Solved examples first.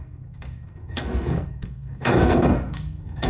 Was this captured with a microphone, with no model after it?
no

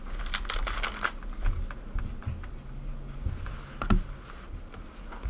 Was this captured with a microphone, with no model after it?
yes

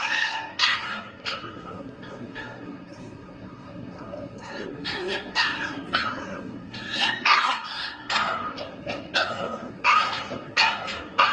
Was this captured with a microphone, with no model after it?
no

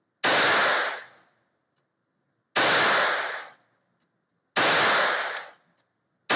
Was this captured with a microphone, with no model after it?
yes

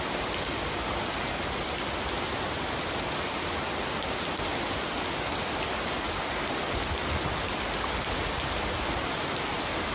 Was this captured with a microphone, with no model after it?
yes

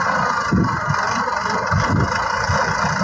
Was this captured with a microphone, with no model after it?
yes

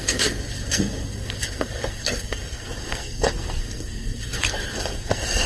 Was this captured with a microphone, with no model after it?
no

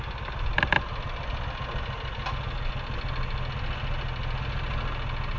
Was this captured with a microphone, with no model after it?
yes